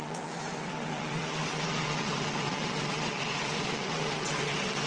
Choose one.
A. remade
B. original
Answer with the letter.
A